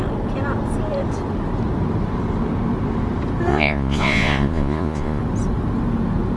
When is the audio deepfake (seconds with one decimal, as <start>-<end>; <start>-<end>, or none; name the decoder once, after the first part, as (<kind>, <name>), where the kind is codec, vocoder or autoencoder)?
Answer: 3.5-5.2 (vocoder, Vocos)